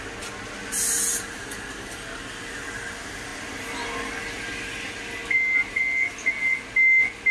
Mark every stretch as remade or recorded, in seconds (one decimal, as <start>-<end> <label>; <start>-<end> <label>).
0.0-7.3 recorded